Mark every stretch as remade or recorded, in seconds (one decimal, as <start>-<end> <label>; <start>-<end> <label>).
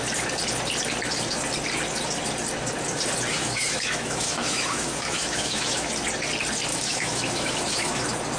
0.0-3.3 recorded; 3.3-5.9 remade; 5.9-6.7 recorded; 6.7-8.0 remade; 8.0-8.4 recorded